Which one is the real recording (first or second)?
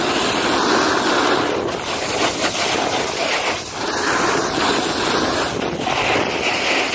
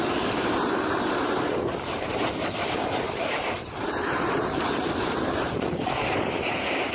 first